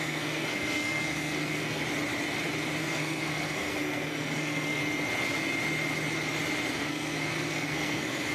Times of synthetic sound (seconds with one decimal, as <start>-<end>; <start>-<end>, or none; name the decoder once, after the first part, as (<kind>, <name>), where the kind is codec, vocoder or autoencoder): 0.0-1.8 (codec, SNAC); 2.8-4.8; 6.7-8.3